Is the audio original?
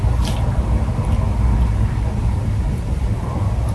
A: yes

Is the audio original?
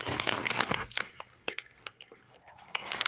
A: no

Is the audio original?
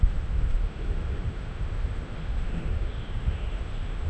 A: no